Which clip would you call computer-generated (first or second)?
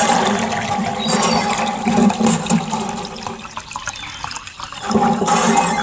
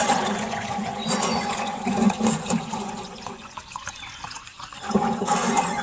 second